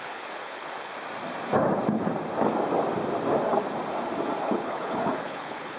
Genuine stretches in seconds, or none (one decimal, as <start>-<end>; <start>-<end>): 0.9-4.4